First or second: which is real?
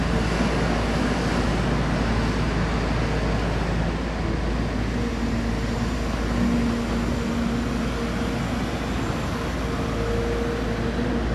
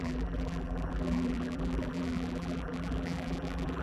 first